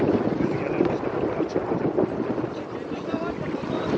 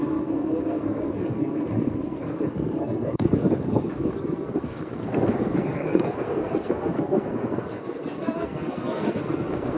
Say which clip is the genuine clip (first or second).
first